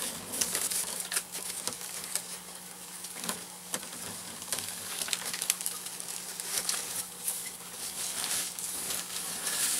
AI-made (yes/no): yes